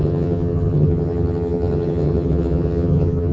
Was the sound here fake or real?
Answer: fake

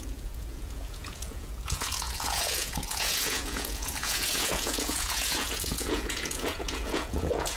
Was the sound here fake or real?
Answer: fake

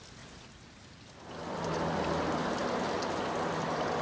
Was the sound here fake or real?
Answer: real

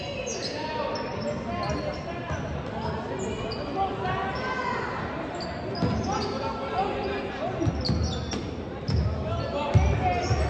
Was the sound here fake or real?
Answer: real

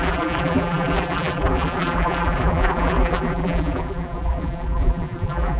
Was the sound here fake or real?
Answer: fake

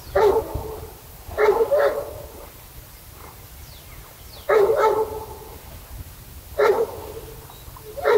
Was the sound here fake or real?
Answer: real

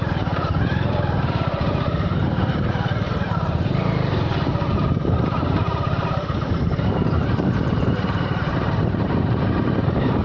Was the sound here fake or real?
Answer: fake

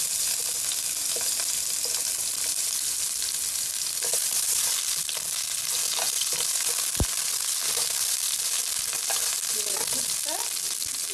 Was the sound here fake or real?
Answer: real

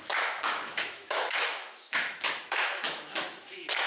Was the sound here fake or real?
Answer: fake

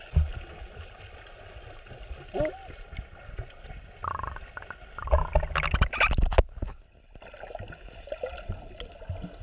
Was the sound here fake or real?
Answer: real